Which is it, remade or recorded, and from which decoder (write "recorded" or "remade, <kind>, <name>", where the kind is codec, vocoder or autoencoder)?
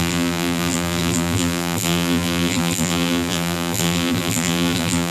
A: remade, vocoder, BigVGAN v2